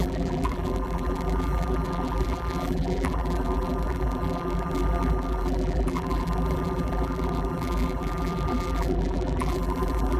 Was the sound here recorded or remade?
remade